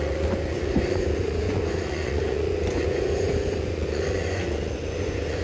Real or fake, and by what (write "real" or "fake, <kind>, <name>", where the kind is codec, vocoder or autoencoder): fake, vocoder, Vocos